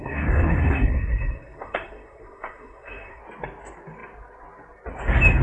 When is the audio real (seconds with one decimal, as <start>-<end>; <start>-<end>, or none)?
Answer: 3.2-5.4